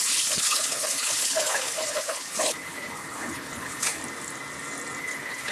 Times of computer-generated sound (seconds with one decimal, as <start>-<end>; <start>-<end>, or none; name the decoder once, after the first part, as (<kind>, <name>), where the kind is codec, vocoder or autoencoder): 0.0-4.0 (codec, HILCodec); 5.0-5.5